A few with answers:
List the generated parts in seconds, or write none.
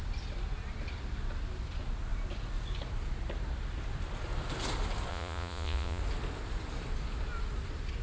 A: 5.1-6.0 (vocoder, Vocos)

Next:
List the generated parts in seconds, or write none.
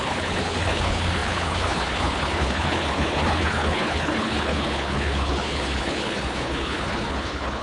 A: 0.0-7.6 (codec, HILCodec)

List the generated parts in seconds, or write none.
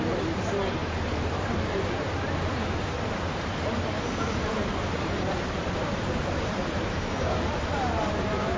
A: 0.0-8.6 (vocoder, BigVGAN v2)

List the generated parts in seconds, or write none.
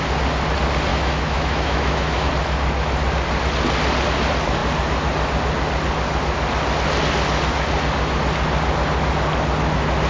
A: 0.9-2.3 (autoencoder, DAC-VAE)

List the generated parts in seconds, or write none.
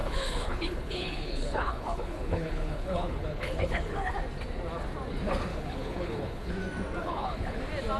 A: 0.0-4.1 (codec, HILCodec); 5.5-6.5; 7.0-7.6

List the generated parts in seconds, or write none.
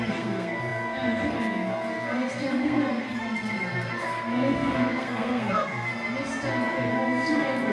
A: 0.0-5.9 (codec, SNAC); 6.9-7.7